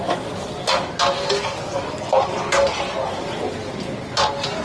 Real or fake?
real